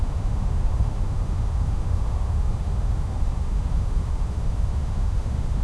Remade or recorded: remade